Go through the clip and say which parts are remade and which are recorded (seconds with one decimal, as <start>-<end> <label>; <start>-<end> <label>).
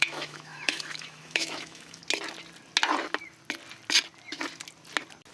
0.0-2.0 remade; 2.0-5.3 recorded